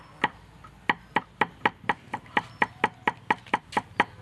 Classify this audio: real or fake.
real